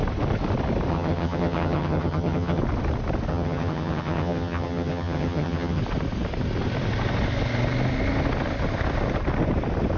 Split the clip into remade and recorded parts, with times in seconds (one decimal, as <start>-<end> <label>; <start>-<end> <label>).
0.0-0.9 recorded; 0.9-2.6 remade; 2.6-3.3 recorded; 3.3-5.8 remade; 5.8-10.0 recorded